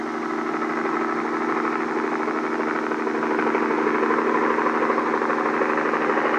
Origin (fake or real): real